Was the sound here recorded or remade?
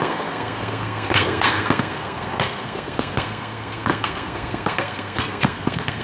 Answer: remade